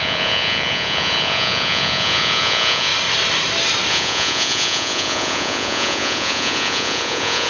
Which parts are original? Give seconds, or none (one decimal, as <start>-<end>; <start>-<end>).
2.9-3.9